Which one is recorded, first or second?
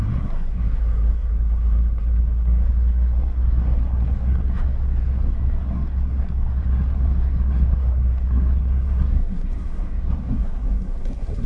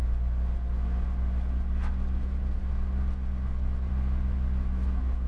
second